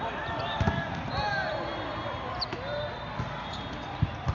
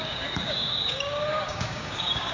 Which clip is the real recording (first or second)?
first